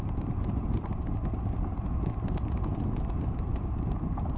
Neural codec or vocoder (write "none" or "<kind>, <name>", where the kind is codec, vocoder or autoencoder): none